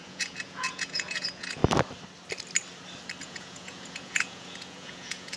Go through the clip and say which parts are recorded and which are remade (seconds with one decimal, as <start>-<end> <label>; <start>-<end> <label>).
0.0-1.6 remade; 1.6-3.2 recorded; 3.2-5.4 remade

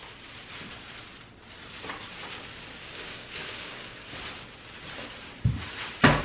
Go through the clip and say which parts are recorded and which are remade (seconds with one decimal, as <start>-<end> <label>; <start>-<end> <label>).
0.0-2.8 recorded; 2.8-4.1 remade; 4.1-6.2 recorded

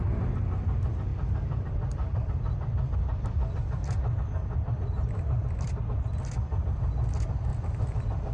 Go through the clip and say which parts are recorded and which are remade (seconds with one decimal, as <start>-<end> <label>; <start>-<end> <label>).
0.0-1.1 recorded; 1.1-5.8 remade; 5.8-7.5 recorded; 7.5-8.3 remade

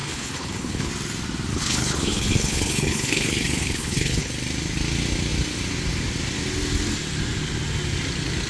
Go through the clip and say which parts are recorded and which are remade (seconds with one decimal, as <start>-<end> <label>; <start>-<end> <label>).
0.0-0.9 remade; 0.9-1.5 recorded; 1.5-4.3 remade; 4.3-8.5 recorded

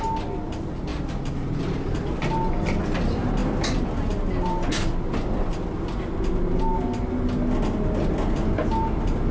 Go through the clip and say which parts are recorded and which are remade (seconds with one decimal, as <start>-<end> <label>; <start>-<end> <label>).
0.0-0.9 recorded; 0.9-1.6 remade; 1.6-9.3 recorded

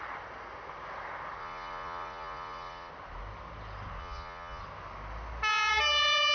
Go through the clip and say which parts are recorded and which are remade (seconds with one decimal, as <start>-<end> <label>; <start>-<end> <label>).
0.0-1.4 recorded; 1.4-2.9 remade; 2.9-4.0 recorded; 4.0-4.6 remade; 4.6-6.3 recorded

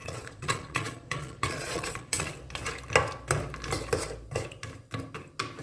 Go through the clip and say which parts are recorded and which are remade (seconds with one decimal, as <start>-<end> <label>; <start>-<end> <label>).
0.0-2.3 remade; 2.3-5.6 recorded